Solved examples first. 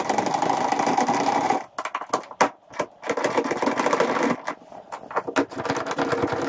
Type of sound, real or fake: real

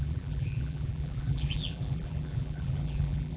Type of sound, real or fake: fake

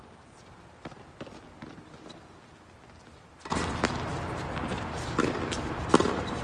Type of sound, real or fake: real